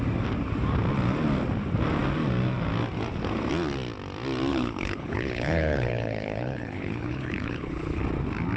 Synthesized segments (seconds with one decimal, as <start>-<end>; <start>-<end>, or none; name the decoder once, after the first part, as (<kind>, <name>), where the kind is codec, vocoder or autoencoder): 4.5-8.0 (codec, HILCodec)